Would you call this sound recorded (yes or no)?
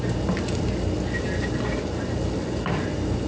yes